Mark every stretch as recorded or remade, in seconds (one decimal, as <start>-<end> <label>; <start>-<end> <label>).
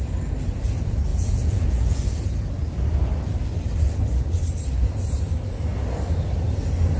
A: 0.0-1.1 recorded; 1.1-2.0 remade; 2.0-7.0 recorded